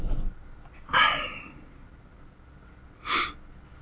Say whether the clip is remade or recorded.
recorded